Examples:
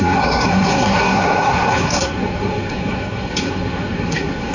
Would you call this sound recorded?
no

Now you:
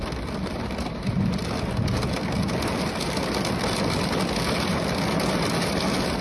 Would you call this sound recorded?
yes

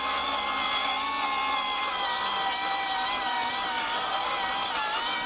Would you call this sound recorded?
yes